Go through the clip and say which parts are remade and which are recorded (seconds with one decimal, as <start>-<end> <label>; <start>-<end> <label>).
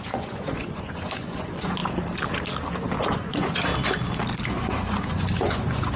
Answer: 0.0-1.8 remade; 1.8-3.0 recorded; 3.0-3.7 remade; 3.7-4.5 recorded; 4.5-6.0 remade